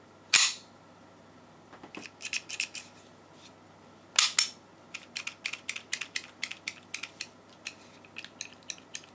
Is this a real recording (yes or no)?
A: yes